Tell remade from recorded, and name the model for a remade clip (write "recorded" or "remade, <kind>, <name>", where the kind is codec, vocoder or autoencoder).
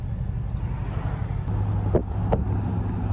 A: recorded